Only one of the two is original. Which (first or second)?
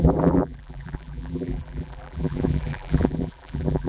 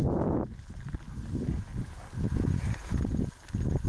second